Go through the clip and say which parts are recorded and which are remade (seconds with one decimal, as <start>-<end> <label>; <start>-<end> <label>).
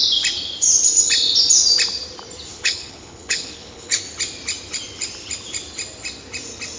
0.0-2.5 recorded; 2.5-4.0 remade; 4.0-6.8 recorded